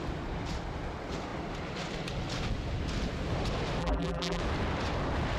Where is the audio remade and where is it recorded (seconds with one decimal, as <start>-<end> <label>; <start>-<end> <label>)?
0.0-3.8 recorded; 3.8-4.4 remade; 4.4-5.4 recorded